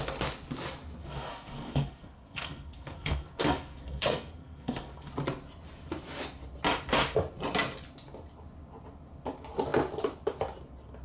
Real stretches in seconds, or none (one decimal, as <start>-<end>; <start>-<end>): 0.0-1.0; 5.1-11.0